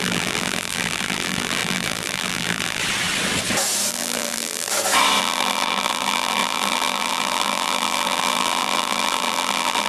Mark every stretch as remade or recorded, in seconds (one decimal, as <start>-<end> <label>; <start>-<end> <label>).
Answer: 0.0-2.8 remade; 2.8-3.9 recorded; 3.9-4.7 remade; 4.7-5.2 recorded; 5.2-9.9 remade